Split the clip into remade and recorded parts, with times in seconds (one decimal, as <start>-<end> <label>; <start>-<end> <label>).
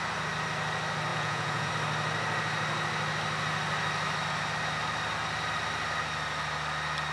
0.0-1.1 recorded; 1.1-1.7 remade; 1.7-7.1 recorded